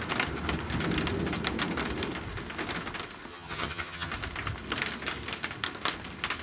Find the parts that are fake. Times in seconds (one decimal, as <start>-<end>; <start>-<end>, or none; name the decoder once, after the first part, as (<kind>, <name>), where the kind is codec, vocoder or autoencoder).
3.3-4.1 (vocoder, HiFi-GAN)